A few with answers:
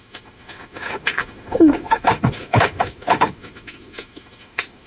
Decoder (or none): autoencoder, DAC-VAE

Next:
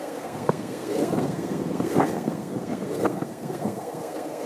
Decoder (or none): codec, SNAC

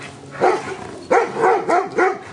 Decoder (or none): none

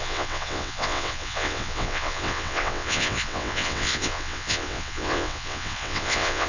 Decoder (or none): vocoder, WaveNeXt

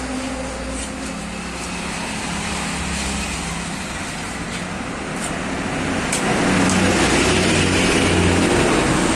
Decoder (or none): none